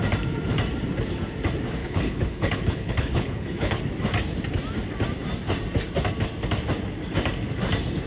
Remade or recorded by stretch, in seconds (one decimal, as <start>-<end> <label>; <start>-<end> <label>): 0.0-1.8 recorded; 1.8-3.8 remade; 3.8-8.1 recorded